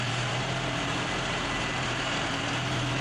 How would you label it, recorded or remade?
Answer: remade